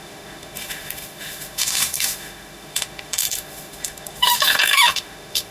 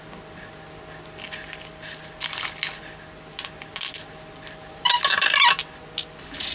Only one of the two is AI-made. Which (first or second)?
first